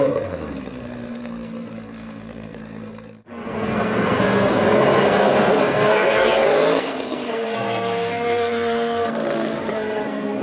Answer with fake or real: fake